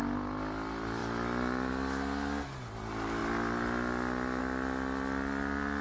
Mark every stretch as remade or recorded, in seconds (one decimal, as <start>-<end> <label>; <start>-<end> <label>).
0.0-5.8 recorded